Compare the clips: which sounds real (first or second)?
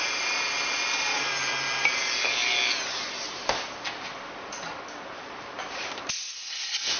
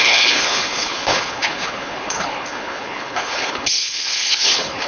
first